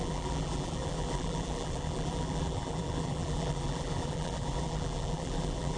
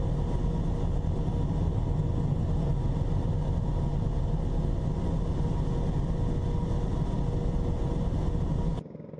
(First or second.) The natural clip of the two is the second